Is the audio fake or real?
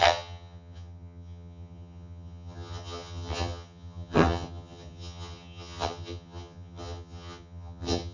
fake